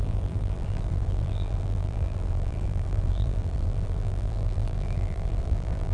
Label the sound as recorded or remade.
remade